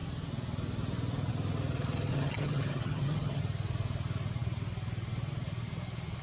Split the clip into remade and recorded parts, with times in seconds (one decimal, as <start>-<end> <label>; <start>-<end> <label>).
0.0-2.1 recorded; 2.1-3.4 remade; 3.4-6.2 recorded